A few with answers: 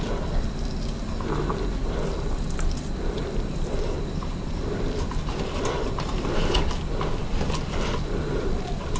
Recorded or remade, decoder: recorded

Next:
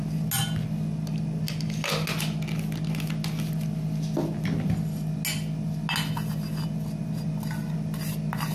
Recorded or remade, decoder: recorded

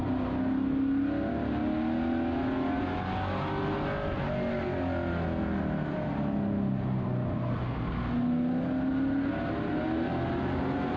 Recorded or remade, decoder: recorded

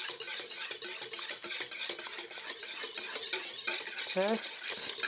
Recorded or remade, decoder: recorded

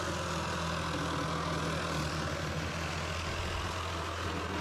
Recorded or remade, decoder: recorded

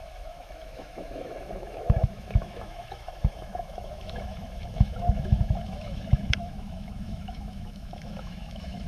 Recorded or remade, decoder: remade, autoencoder, DAC-VAE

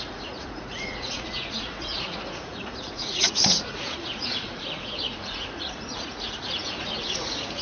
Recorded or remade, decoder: remade, vocoder, Vocos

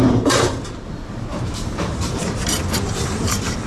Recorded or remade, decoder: remade, vocoder, BigVGAN v2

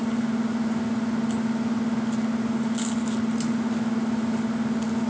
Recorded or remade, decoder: recorded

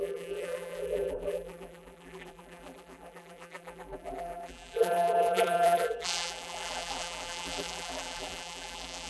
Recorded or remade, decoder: remade, vocoder, BigVGAN v2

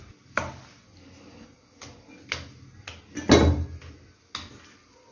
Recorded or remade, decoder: recorded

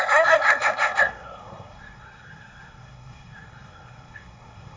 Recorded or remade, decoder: remade, codec, SNAC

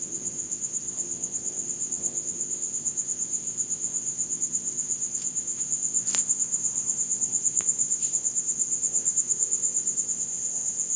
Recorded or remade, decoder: remade, vocoder, Vocos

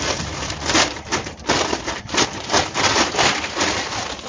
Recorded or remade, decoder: remade, vocoder, BigVGAN v2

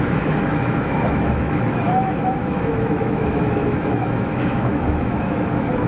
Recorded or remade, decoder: remade, autoencoder, DAC-VAE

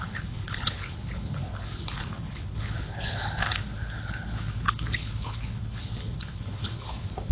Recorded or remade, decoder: remade, codec, HILCodec